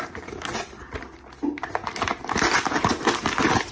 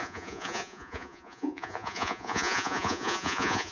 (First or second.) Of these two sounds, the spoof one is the second